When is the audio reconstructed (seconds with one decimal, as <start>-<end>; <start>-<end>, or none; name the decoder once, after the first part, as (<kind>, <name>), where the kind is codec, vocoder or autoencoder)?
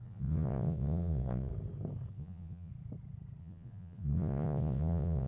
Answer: 0.0-1.5 (vocoder, Vocos); 2.1-2.7; 3.4-5.3